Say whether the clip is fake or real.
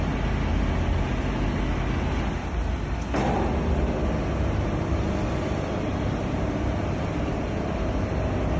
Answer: real